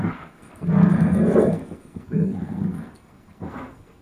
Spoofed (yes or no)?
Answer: yes